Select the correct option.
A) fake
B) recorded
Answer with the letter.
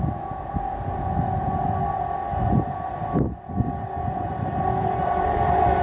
B